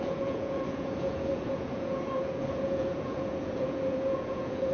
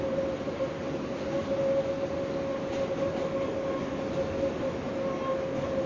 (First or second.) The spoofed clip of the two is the first